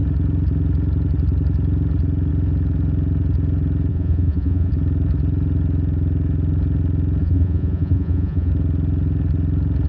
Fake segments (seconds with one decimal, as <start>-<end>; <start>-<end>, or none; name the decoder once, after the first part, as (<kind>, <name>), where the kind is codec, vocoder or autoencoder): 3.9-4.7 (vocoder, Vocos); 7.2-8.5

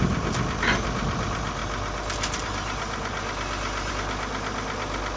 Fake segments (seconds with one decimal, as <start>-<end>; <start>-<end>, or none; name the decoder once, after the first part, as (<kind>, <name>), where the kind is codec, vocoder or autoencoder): none

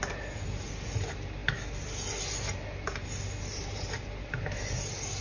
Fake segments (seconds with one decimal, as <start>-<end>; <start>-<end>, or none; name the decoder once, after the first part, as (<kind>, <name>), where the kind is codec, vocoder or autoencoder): none

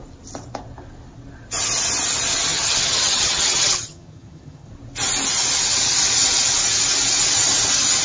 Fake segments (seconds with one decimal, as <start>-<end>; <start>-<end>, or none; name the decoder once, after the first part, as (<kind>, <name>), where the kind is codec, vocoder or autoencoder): 2.5-4.7 (vocoder, HiFi-GAN)

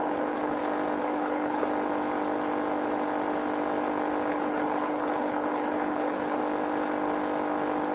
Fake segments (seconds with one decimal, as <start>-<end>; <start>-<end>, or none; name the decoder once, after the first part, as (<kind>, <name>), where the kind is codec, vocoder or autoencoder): 0.0-0.6 (codec, HILCodec); 1.0-1.6; 4.3-6.4